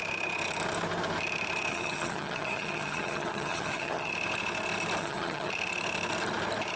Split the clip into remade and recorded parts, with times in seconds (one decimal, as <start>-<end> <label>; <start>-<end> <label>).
0.0-1.7 recorded; 1.7-4.1 remade; 4.1-5.0 recorded; 5.0-5.5 remade; 5.5-6.8 recorded